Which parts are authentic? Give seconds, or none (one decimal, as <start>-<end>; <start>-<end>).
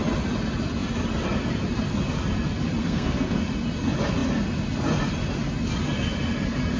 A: 0.0-2.8; 3.4-6.8